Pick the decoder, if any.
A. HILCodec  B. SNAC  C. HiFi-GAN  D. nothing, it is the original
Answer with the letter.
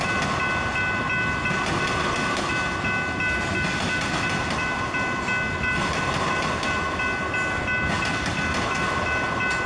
D